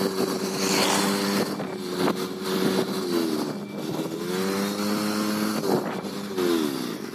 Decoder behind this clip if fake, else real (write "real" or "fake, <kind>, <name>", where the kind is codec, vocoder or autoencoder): real